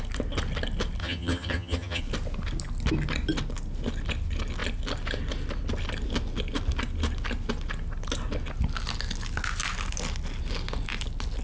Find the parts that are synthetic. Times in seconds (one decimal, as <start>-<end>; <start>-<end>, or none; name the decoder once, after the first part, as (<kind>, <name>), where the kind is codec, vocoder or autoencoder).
1.0-2.0 (vocoder, HiFi-GAN)